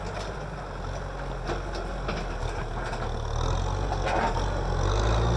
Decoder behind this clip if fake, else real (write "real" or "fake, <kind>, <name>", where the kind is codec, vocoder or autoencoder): real